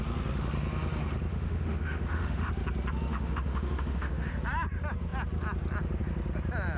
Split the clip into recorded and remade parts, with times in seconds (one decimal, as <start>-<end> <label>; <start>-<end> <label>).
0.0-1.3 recorded; 1.3-2.5 remade; 2.5-3.1 recorded; 3.1-4.3 remade; 4.3-6.8 recorded